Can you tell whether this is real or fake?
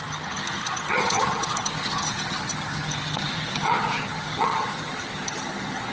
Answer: fake